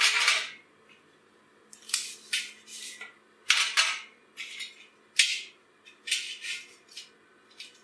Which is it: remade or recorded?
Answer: recorded